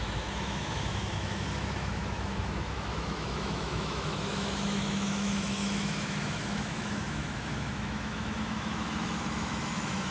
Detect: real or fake fake